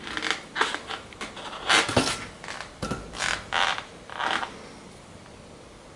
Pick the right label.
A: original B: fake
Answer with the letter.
A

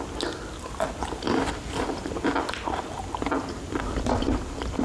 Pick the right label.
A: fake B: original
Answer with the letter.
B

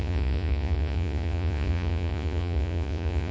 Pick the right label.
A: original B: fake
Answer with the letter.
B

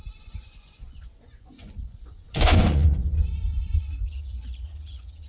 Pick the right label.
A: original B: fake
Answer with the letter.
B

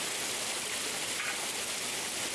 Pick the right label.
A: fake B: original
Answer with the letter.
B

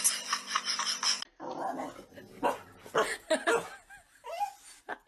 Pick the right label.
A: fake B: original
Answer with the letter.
B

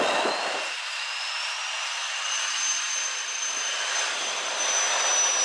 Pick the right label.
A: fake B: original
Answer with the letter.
B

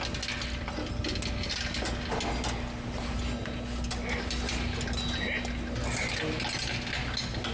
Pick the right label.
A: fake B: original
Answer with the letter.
B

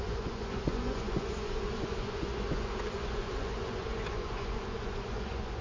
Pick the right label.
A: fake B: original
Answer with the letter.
A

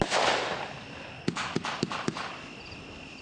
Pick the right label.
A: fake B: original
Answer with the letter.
B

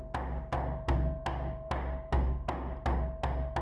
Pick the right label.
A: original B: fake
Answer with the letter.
A